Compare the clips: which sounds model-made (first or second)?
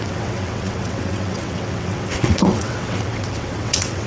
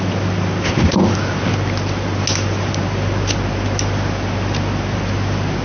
first